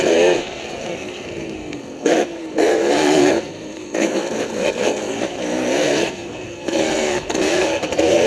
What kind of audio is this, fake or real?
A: fake